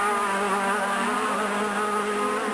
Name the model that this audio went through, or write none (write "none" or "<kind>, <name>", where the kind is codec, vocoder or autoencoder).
none